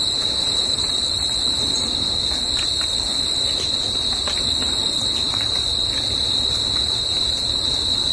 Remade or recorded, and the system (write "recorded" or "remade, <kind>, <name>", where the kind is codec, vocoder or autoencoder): recorded